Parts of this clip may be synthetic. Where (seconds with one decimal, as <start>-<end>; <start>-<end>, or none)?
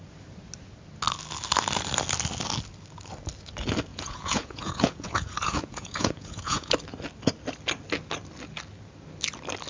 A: 3.9-6.7